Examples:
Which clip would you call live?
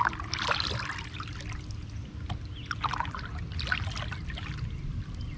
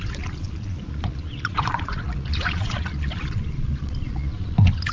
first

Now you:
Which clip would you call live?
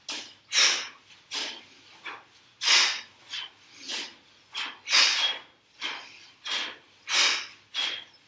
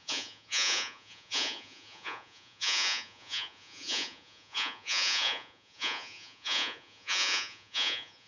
first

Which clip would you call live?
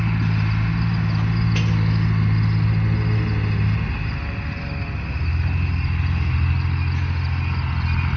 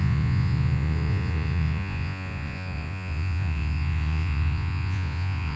first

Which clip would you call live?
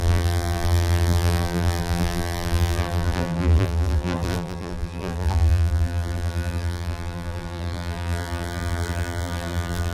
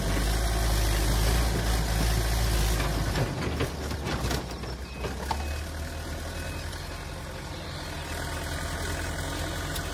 second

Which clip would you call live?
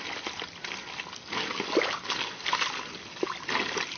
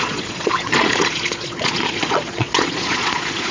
first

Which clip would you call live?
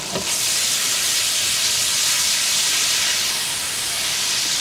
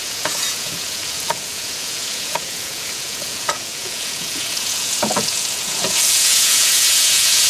first